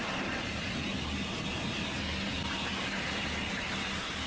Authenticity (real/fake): real